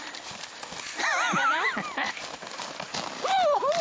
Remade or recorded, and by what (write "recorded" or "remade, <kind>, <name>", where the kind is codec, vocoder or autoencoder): recorded